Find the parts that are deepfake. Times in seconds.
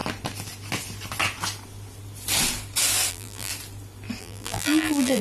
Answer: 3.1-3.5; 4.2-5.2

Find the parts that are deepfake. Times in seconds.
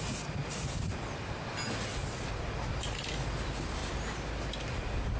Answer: 3.8-4.7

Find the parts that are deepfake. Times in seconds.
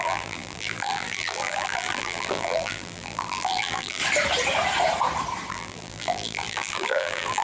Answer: 0.0-4.0; 5.5-7.4